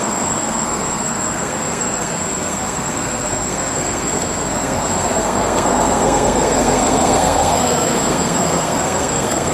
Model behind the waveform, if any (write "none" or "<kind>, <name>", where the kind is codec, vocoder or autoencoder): codec, SNAC